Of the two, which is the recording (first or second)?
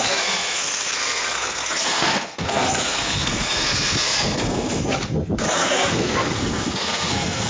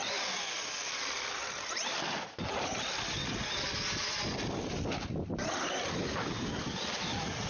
second